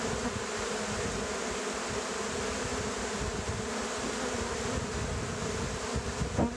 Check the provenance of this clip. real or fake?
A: real